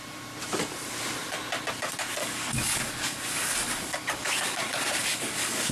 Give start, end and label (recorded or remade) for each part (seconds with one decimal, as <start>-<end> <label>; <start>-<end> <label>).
0.0-2.2 recorded; 2.2-5.7 remade